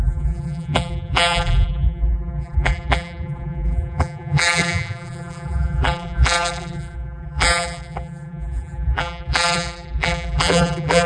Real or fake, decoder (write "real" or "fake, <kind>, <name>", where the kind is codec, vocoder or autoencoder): fake, vocoder, BigVGAN v2